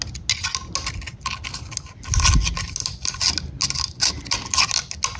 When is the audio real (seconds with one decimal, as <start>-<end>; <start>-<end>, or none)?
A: 0.0-5.2